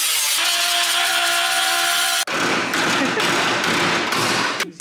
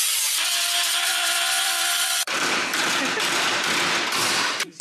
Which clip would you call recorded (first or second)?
first